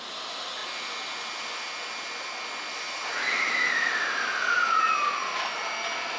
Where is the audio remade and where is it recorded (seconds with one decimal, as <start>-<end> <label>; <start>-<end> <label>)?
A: 0.0-6.2 recorded